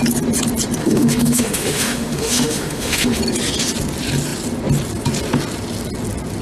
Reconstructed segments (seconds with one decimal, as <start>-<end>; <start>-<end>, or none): 0.8-3.2